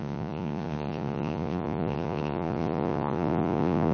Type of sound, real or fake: fake